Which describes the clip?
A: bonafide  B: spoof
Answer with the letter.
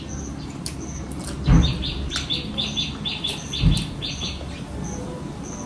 A